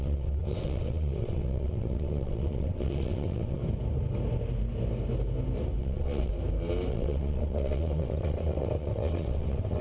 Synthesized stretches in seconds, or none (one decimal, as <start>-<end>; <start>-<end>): 0.0-3.6; 5.8-6.3; 6.9-9.8

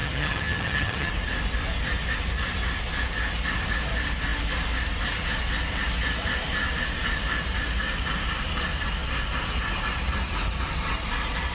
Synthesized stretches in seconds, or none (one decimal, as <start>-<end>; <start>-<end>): 0.0-1.1

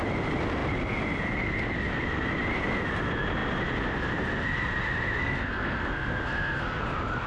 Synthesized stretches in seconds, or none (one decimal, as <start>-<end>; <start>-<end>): 5.2-6.8